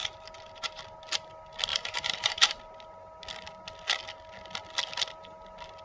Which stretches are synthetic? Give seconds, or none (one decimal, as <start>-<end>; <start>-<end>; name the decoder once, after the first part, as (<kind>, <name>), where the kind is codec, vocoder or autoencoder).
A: 0.0-0.8 (vocoder, BigVGAN v2); 1.7-2.6